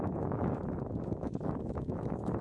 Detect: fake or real fake